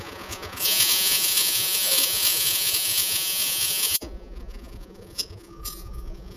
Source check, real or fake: fake